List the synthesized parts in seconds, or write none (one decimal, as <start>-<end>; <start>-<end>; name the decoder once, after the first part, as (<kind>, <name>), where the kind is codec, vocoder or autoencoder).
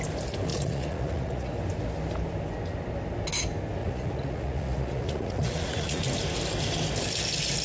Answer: 0.5-1.5 (vocoder, Vocos); 3.8-6.0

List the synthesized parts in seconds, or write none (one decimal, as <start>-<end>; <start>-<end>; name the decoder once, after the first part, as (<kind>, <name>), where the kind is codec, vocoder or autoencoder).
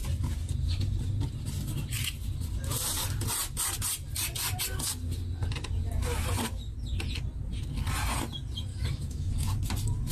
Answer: 8.7-9.3 (autoencoder, DAC-VAE)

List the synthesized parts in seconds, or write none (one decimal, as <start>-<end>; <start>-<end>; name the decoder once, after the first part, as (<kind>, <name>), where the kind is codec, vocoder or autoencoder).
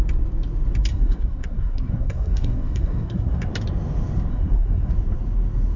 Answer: 0.9-3.5 (codec, SNAC); 4.3-4.9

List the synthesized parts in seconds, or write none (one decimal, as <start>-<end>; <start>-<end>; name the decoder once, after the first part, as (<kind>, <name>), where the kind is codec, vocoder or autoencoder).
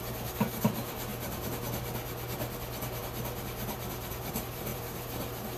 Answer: 0.0-1.1 (vocoder, BigVGAN v2); 4.1-5.6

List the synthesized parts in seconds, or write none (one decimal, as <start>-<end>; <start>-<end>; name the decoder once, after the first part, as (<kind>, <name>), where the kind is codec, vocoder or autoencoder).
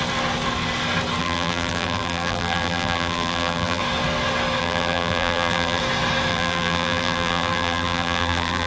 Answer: 1.2-3.8 (vocoder, BigVGAN v2); 4.6-5.8; 6.3-8.7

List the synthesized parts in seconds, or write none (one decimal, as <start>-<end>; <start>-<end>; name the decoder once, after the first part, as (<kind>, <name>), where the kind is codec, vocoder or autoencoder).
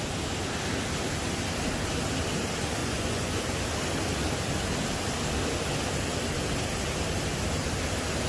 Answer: 2.8-3.4 (vocoder, Vocos)